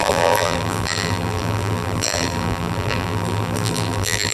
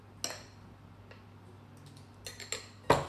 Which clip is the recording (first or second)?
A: second